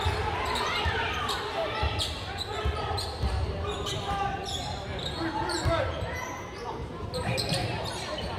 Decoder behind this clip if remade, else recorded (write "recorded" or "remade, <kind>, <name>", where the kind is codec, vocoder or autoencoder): remade, vocoder, BigVGAN v2